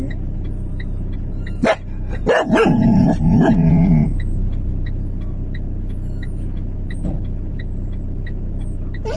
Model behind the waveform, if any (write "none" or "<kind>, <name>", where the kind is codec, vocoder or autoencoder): vocoder, Vocos